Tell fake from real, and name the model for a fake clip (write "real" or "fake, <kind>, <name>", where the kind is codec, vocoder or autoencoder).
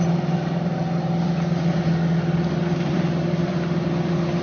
real